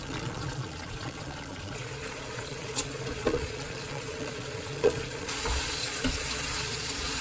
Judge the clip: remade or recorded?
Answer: remade